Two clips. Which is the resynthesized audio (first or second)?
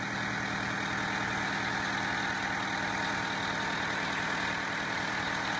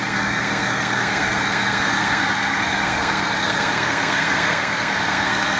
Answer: second